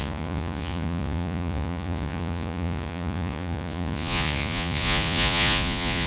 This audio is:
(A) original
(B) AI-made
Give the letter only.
B